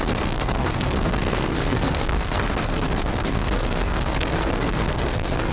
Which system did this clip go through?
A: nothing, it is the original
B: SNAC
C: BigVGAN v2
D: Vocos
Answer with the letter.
B